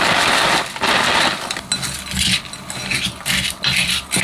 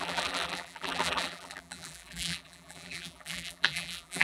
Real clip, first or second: first